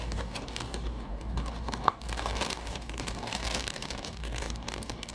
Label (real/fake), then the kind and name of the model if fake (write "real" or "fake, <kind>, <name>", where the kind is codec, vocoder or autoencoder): fake, codec, DAC